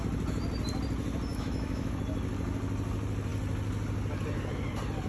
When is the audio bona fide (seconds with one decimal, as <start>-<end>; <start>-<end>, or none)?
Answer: 0.0-1.3; 2.0-5.1

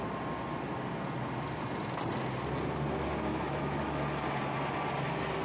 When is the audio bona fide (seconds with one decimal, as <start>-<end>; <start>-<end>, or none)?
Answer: 0.0-3.3; 4.0-5.4

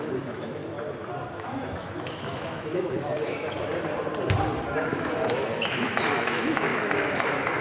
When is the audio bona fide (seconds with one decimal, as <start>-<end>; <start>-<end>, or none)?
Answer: 0.6-1.3; 3.7-4.8

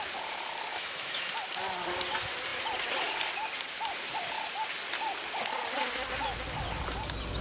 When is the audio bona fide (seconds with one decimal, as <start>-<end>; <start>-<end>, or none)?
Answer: 0.0-0.7; 1.3-7.4

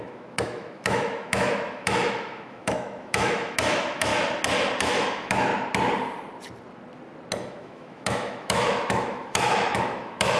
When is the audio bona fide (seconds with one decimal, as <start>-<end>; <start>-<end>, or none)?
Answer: 4.1-4.8; 5.5-7.5

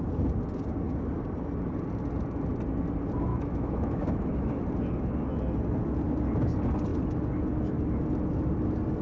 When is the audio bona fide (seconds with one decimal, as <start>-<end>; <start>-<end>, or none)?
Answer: 0.0-3.3; 4.6-9.0

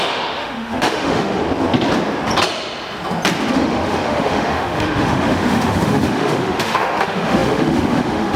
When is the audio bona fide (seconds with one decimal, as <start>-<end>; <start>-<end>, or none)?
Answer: 1.4-3.5

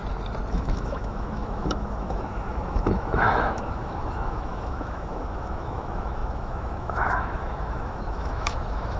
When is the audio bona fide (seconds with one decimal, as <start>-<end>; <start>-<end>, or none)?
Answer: 0.0-0.5